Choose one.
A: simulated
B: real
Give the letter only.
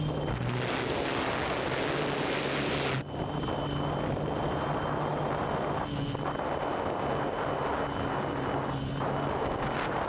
B